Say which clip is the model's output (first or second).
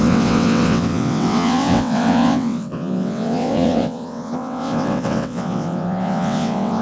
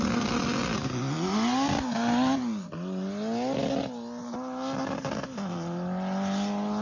first